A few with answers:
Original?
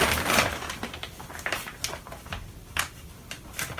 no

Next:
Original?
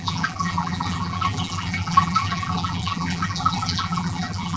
no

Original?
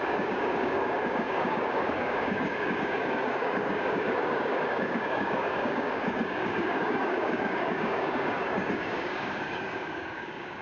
no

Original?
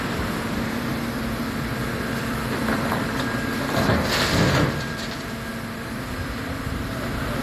no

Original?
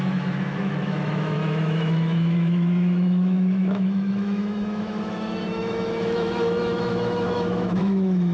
no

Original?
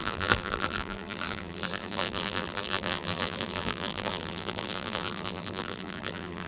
no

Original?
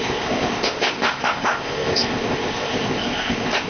no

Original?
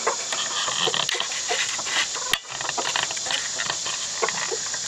yes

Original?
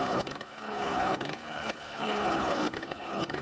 no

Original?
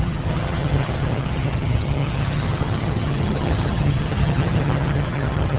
no